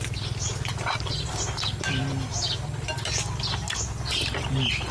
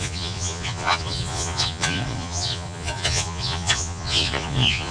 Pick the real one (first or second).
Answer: first